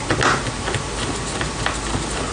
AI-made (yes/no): no